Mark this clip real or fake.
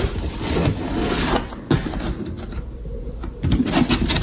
real